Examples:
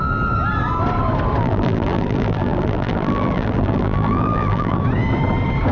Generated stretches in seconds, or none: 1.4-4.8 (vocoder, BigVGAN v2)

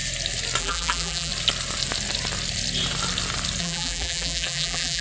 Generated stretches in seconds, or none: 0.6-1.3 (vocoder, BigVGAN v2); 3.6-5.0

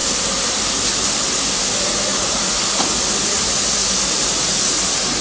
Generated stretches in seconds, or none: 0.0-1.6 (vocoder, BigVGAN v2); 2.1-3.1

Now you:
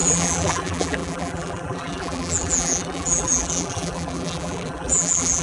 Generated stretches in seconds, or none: 0.0-5.4 (vocoder, BigVGAN v2)

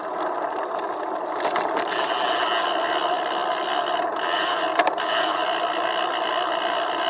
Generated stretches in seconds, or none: 3.4-6.3 (vocoder, BigVGAN v2)

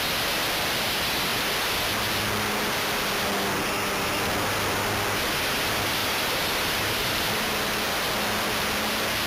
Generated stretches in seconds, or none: 6.0-7.3 (vocoder, BigVGAN v2)

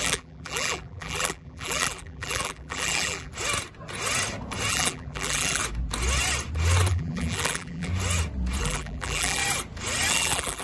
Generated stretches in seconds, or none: 0.0-3.3 (vocoder, BigVGAN v2); 4.7-5.6; 6.9-7.9; 8.6-9.4; 10.1-10.6

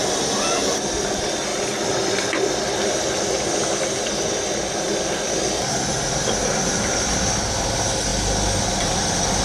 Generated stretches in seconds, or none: none